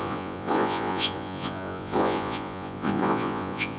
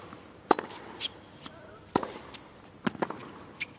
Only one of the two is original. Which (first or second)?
second